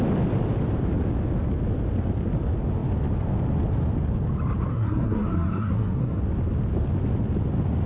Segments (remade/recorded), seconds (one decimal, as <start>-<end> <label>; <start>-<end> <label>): 0.0-4.7 recorded; 4.7-6.2 remade; 6.2-7.9 recorded